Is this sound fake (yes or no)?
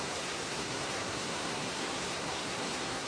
yes